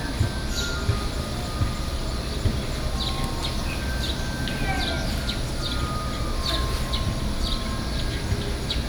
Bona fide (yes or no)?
yes